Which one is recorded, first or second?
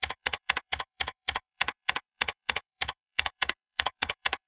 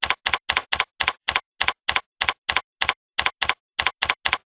second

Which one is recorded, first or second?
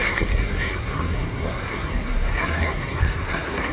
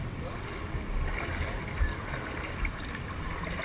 second